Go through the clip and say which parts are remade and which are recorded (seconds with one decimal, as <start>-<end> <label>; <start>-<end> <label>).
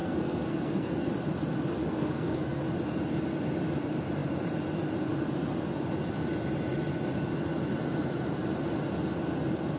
0.0-1.1 remade; 1.1-1.8 recorded; 1.8-2.6 remade; 2.6-9.8 recorded